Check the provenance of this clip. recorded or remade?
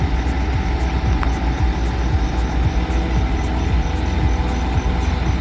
recorded